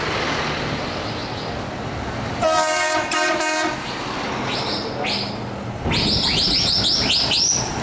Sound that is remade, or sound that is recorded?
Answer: recorded